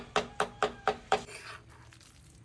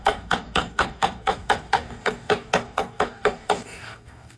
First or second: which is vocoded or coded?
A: second